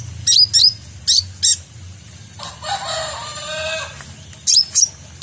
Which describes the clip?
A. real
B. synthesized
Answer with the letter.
A